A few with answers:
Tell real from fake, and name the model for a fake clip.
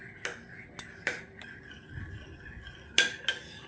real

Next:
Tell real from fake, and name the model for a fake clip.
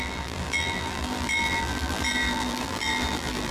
fake, vocoder, BigVGAN v2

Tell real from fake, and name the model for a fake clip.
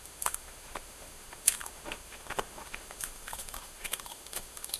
fake, autoencoder, DAC-VAE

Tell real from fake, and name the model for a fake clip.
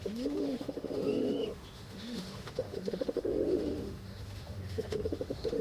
fake, autoencoder, DAC-VAE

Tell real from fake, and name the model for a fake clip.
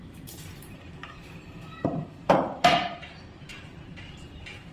fake, vocoder, BigVGAN v2